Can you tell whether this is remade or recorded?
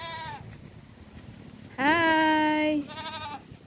recorded